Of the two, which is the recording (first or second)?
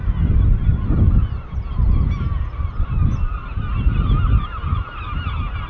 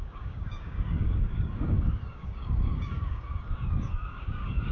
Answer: first